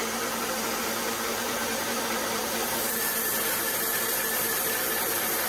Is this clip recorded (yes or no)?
no